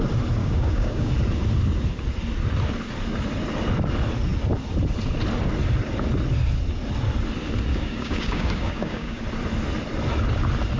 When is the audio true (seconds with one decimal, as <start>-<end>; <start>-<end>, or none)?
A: 0.0-0.4; 1.1-7.7; 9.2-10.8